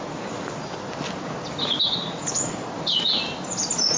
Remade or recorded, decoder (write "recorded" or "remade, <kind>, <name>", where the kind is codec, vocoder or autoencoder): recorded